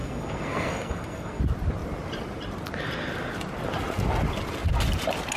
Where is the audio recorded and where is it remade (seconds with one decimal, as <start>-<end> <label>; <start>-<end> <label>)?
0.0-1.4 remade; 1.4-5.4 recorded